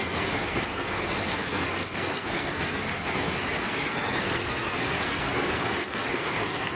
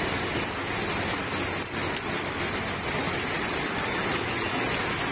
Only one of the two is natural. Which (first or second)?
second